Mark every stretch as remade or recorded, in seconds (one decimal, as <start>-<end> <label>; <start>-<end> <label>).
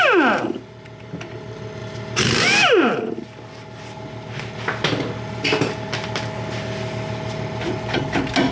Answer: 0.0-8.5 recorded